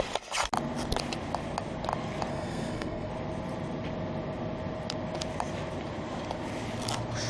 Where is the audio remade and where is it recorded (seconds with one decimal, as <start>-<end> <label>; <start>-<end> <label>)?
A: 0.0-2.3 recorded; 2.3-3.1 remade; 3.1-7.3 recorded